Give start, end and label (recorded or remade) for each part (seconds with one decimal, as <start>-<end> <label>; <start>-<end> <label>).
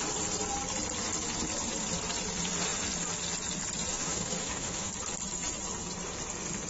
0.0-3.9 recorded; 3.9-4.9 remade; 4.9-6.7 recorded